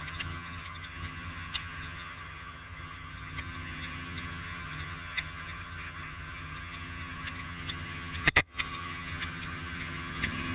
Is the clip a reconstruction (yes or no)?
yes